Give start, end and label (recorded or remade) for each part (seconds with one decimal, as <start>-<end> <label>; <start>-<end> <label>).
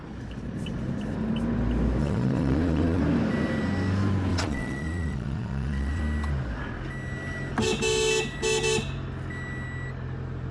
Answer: 0.0-2.0 recorded; 2.0-3.0 remade; 3.0-4.3 recorded; 4.3-6.0 remade; 6.0-10.5 recorded